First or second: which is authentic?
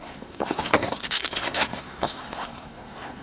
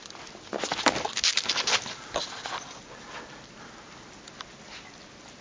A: second